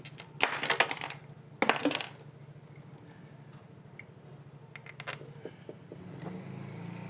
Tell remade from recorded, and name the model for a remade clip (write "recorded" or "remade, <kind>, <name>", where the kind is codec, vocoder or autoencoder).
recorded